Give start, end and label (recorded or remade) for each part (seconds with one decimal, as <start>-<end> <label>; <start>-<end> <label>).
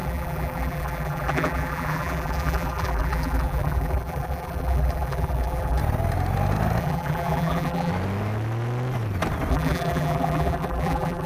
0.0-5.8 remade; 5.8-6.8 recorded; 6.8-7.9 remade; 7.9-9.5 recorded; 9.5-11.3 remade